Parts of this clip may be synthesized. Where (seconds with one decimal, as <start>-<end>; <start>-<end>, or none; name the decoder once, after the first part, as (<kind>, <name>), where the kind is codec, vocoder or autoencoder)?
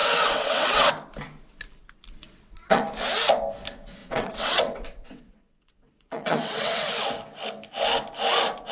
0.0-0.9 (vocoder, WaveNeXt); 2.2-2.8; 4.0-6.9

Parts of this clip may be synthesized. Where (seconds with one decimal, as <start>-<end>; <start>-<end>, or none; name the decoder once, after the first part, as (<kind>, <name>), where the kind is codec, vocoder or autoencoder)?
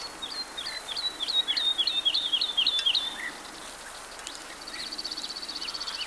none